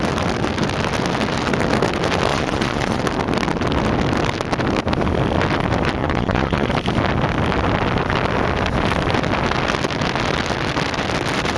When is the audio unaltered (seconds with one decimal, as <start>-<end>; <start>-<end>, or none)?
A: 0.0-2.3; 3.0-6.0; 6.7-11.6